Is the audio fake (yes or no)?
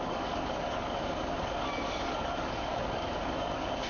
yes